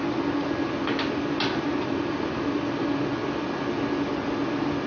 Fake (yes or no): no